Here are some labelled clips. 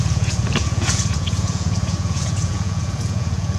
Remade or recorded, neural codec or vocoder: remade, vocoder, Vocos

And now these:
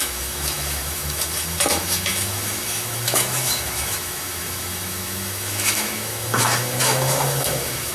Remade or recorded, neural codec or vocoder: remade, autoencoder, DAC-VAE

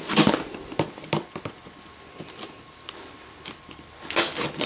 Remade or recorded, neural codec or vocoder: recorded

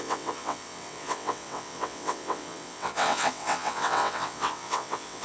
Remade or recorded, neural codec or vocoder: remade, vocoder, WaveNeXt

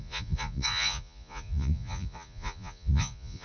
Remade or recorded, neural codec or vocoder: remade, vocoder, Vocos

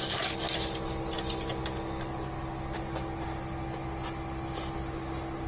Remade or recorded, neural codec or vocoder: recorded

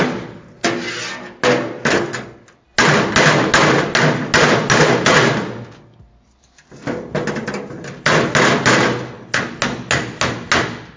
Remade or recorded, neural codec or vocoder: recorded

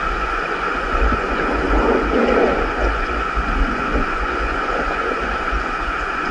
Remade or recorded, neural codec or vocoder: remade, vocoder, Vocos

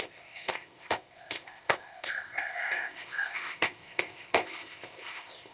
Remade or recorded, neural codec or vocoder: remade, codec, ZipCodec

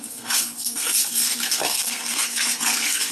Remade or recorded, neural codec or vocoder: remade, codec, SNAC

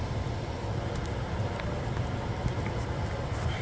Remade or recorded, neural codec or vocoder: remade, vocoder, BigVGAN v2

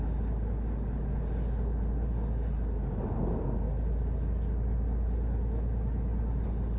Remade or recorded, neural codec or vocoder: recorded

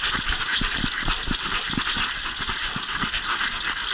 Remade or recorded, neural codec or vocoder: recorded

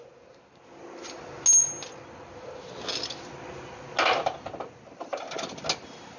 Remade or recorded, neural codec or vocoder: recorded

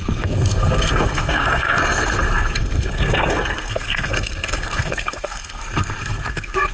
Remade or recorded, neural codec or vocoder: remade, codec, SNAC